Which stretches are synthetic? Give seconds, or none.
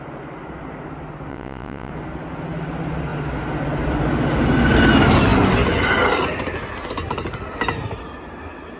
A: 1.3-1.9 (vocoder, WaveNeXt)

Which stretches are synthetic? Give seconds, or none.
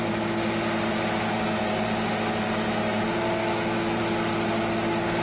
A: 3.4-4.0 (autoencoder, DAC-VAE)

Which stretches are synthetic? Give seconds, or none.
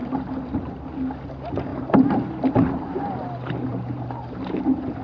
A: 0.0-0.9 (vocoder, BigVGAN v2); 1.7-5.0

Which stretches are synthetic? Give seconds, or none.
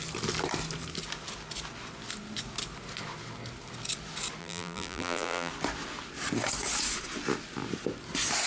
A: 4.4-5.5 (vocoder, BigVGAN v2)